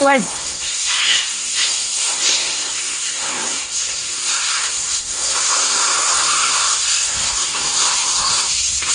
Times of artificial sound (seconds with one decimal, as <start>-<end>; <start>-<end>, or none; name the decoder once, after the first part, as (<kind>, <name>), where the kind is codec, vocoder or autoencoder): 0.0-8.9 (codec, SNAC)